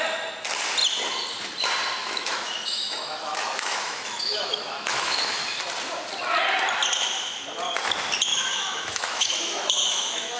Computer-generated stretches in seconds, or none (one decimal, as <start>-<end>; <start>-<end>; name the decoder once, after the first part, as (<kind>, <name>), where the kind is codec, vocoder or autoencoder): 2.0-5.6 (autoencoder, DAC-VAE); 8.3-10.4